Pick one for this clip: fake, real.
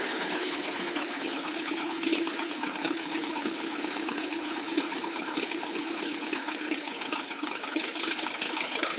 fake